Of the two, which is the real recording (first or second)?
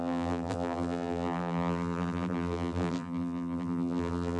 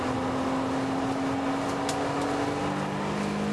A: second